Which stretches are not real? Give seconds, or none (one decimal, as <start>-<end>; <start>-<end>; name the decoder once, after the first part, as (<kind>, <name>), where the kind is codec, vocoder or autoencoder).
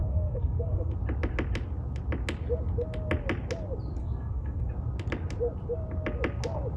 0.0-0.9 (codec, SNAC); 4.0-4.7